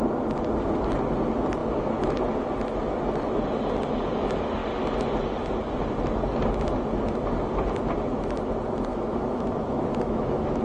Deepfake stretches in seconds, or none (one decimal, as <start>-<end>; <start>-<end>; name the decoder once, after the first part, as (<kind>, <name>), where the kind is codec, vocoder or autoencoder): 8.9-10.6 (autoencoder, DAC-VAE)